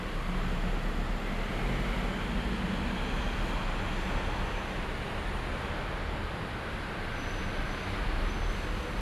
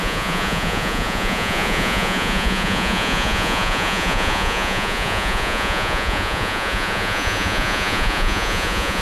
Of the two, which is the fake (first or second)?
second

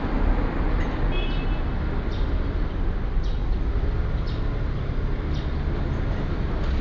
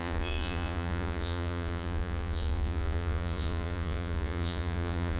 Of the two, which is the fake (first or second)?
second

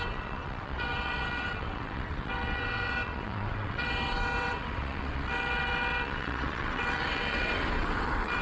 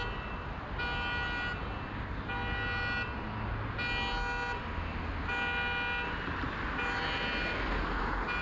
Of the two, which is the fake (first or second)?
first